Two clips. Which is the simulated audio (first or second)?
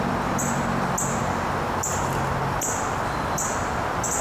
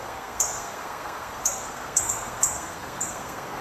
second